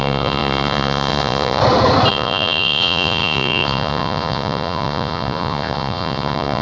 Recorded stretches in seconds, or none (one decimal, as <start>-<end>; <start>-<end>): 1.6-2.1